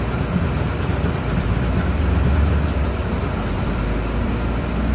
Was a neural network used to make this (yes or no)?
yes